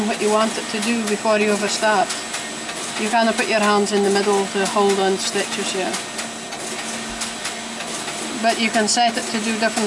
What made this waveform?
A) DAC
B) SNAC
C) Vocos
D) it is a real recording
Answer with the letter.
D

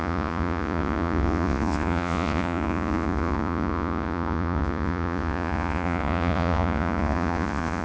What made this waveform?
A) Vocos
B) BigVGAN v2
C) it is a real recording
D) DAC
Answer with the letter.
A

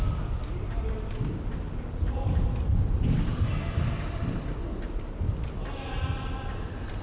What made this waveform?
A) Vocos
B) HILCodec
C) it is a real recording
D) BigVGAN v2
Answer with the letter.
C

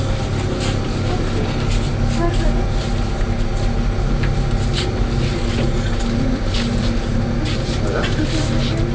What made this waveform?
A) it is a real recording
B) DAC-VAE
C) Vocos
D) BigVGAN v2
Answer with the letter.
A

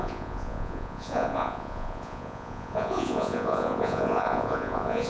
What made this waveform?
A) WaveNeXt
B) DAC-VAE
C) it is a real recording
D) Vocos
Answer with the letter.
D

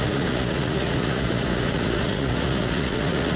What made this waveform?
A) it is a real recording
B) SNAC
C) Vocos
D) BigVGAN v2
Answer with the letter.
C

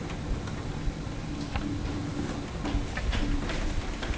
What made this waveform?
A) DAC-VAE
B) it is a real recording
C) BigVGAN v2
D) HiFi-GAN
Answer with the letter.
B